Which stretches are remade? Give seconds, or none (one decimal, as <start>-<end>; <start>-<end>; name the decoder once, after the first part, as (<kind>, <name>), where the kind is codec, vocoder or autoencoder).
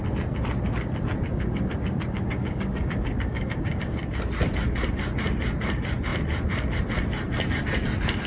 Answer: 1.3-4.0 (codec, DAC)